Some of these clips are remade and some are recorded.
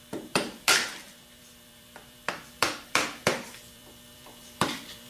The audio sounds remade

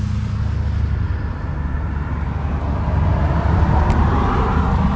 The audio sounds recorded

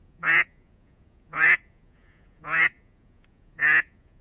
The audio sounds remade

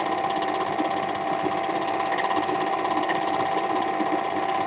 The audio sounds recorded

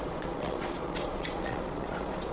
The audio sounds remade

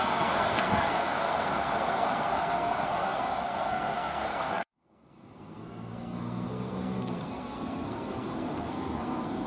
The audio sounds remade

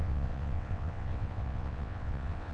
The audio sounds remade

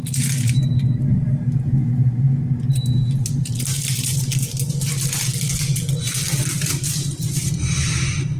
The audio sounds recorded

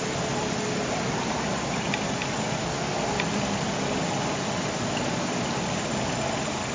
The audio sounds recorded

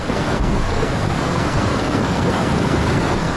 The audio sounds remade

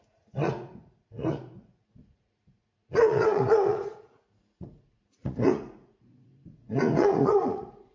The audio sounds remade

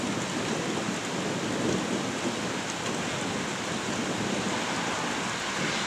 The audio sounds recorded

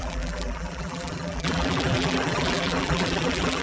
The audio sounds remade